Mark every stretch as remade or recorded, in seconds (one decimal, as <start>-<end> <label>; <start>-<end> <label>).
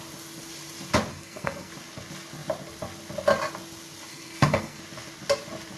0.0-1.1 recorded; 1.1-1.7 remade; 1.7-4.1 recorded; 4.1-4.8 remade; 4.8-5.8 recorded